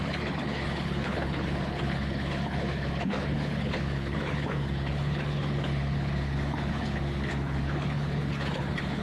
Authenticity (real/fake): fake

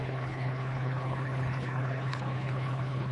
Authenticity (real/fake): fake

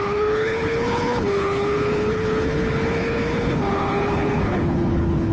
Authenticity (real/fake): fake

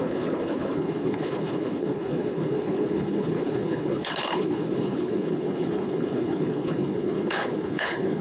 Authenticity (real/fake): fake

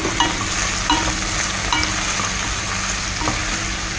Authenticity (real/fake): real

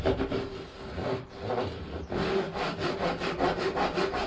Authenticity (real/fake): real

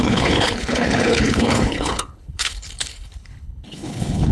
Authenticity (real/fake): fake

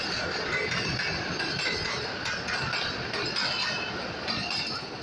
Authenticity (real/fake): real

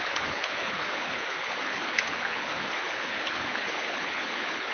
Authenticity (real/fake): fake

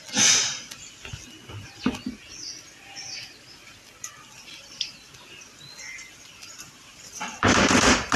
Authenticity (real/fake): real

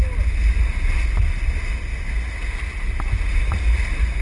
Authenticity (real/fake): real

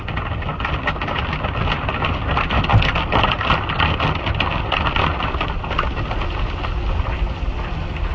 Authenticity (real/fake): real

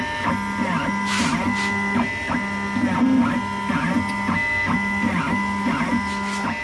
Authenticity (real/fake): real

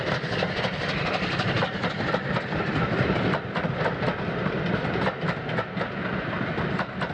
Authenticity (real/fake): real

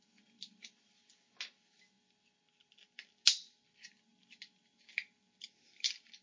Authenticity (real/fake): real